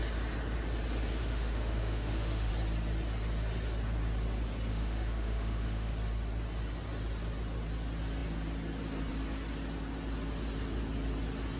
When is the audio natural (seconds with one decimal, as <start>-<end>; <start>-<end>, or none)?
0.0-1.2; 2.5-4.7; 5.9-11.6